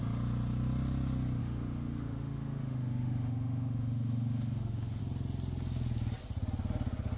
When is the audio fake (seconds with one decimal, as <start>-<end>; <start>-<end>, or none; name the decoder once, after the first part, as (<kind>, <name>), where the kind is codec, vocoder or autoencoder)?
1.4-5.0 (autoencoder, DAC-VAE)